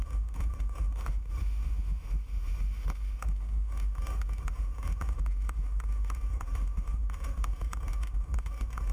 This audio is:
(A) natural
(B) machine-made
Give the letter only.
B